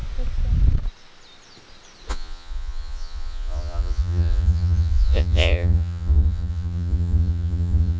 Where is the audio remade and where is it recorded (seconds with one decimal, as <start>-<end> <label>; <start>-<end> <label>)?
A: 0.0-2.1 recorded; 2.1-8.0 remade